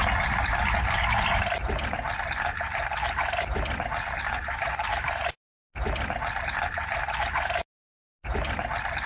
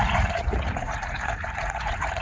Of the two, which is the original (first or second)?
first